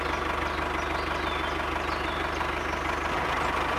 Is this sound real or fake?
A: real